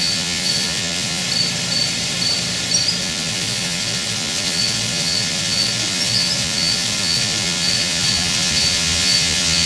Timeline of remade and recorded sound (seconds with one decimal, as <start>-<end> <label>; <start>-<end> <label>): 0.0-1.2 remade; 1.2-3.0 recorded; 3.0-9.7 remade